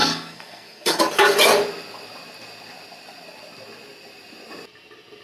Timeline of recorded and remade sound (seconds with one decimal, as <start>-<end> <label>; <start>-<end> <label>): 0.0-1.0 remade; 1.0-5.2 recorded